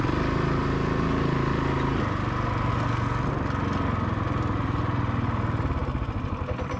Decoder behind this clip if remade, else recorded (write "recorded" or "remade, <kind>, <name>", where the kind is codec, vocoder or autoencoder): recorded